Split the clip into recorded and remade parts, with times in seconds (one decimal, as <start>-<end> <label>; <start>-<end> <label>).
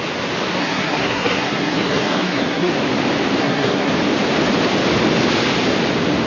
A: 0.0-0.6 recorded; 0.6-2.7 remade; 2.7-3.4 recorded; 3.4-3.9 remade; 3.9-6.3 recorded